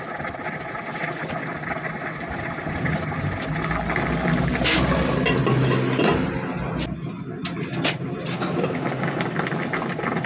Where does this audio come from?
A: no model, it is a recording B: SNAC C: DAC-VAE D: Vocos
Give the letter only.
A